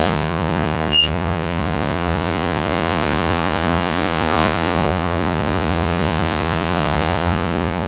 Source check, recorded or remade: remade